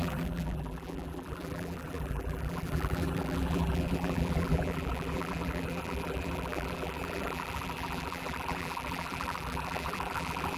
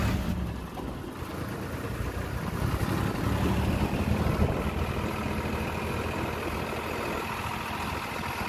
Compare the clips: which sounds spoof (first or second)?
first